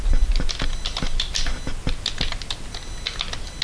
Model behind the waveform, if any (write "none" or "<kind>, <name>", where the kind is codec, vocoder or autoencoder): none